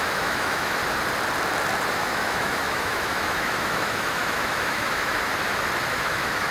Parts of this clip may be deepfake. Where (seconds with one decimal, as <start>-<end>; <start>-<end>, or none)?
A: 0.0-0.8; 1.9-5.3; 5.9-6.5